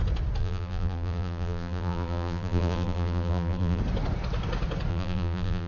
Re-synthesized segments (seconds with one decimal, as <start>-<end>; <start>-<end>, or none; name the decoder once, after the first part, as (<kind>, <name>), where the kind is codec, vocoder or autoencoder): 0.4-3.8 (vocoder, BigVGAN v2); 4.9-5.7

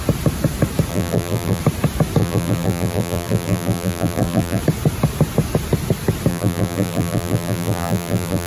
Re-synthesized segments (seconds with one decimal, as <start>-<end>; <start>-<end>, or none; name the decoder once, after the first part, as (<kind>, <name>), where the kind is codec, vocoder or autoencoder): 0.9-1.6 (vocoder, BigVGAN v2); 2.2-4.6; 6.3-8.5

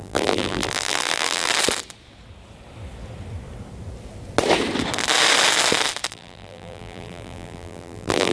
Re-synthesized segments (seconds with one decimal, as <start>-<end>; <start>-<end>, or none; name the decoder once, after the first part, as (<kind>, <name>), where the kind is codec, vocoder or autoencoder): 0.0-1.5 (vocoder, BigVGAN v2); 6.1-8.3

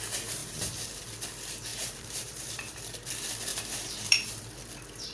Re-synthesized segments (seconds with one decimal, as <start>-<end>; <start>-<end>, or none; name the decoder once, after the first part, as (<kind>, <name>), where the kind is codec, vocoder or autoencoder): 0.4-1.0 (vocoder, BigVGAN v2); 1.7-2.8; 3.5-4.4